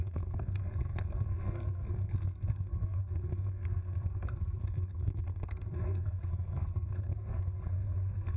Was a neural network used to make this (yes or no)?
yes